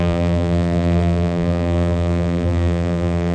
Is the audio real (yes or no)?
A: no